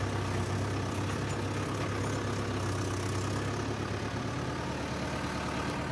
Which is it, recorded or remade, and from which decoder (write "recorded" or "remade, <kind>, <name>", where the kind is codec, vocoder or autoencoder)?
recorded